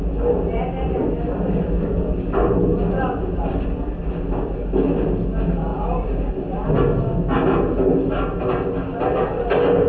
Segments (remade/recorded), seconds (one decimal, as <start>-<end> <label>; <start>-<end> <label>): 0.0-9.9 recorded